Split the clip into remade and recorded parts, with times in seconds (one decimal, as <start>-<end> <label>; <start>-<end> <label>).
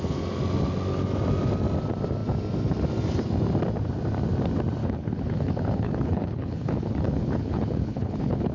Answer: 0.0-4.8 recorded; 4.8-8.5 remade